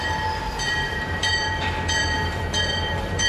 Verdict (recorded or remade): remade